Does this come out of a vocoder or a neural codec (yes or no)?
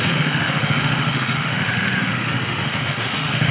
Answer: yes